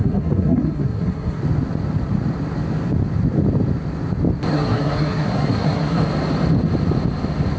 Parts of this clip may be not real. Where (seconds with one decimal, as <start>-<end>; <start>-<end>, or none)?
0.0-1.4; 4.5-6.0